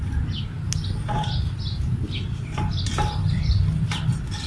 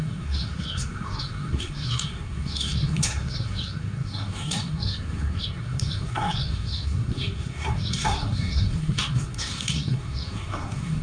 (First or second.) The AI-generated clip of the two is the second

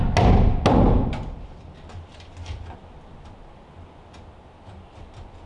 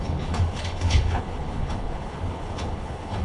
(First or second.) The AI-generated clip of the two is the second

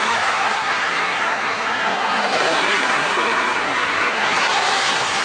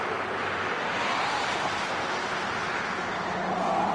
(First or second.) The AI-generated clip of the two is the first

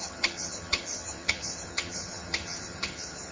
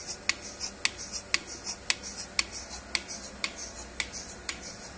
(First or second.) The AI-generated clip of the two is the first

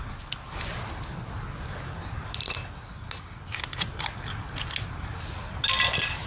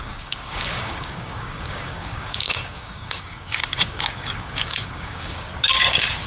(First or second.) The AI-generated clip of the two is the second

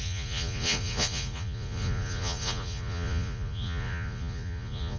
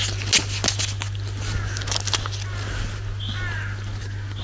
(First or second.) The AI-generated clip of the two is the first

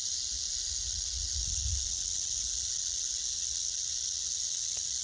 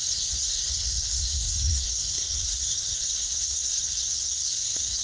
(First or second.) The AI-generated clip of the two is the second